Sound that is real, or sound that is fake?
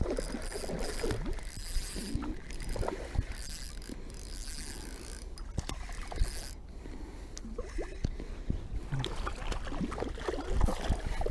real